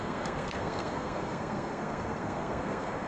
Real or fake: fake